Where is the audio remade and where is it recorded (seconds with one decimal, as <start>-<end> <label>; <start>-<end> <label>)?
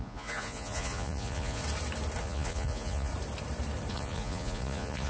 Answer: 0.0-1.6 remade; 1.6-2.2 recorded; 2.2-3.1 remade; 3.1-3.9 recorded; 3.9-5.1 remade